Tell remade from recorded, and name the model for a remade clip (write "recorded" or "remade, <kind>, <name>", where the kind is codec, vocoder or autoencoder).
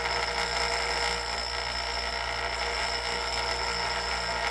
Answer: recorded